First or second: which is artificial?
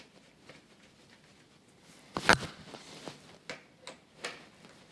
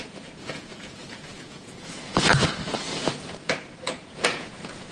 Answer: second